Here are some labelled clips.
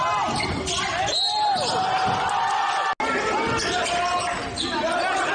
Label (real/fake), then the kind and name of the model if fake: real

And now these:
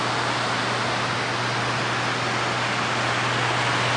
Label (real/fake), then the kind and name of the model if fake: real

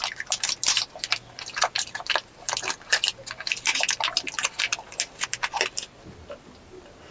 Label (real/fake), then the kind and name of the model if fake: real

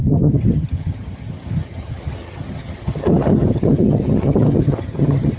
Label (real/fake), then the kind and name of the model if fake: fake, vocoder, HiFi-GAN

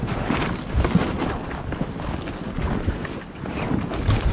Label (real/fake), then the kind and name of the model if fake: real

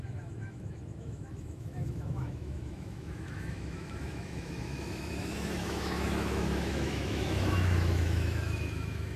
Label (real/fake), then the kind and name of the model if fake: fake, autoencoder, DAC-VAE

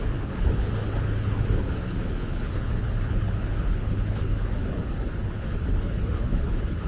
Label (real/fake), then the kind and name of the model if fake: fake, codec, HILCodec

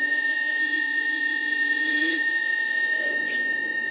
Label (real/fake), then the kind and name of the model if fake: fake, vocoder, Vocos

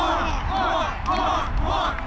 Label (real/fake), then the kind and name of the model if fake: real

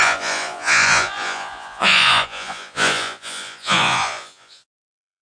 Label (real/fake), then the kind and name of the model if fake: fake, vocoder, Vocos